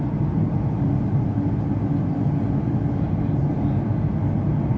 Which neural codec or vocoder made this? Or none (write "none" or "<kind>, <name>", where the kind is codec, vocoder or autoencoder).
none